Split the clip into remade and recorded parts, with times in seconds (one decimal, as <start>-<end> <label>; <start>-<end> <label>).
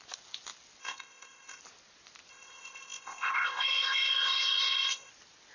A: 0.0-0.8 recorded; 0.8-1.6 remade; 1.6-2.3 recorded; 2.3-5.1 remade; 5.1-5.5 recorded